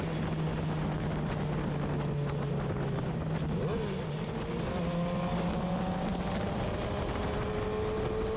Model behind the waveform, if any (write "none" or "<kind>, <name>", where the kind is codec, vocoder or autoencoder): none